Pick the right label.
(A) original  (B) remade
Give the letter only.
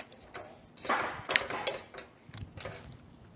A